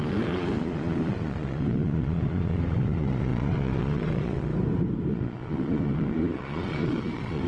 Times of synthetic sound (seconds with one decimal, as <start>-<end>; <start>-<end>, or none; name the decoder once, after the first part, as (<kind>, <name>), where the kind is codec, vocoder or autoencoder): 0.0-4.5 (vocoder, Vocos); 5.1-7.5